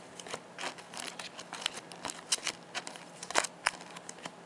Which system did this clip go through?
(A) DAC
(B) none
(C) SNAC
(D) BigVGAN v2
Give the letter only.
B